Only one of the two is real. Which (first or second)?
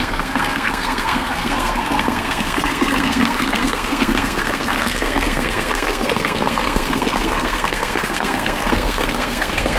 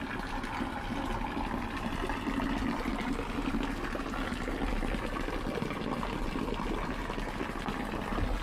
second